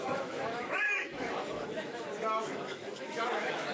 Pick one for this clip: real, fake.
fake